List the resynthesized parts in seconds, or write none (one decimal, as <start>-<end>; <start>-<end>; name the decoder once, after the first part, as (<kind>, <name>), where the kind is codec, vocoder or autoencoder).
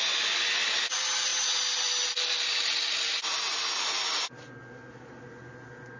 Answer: none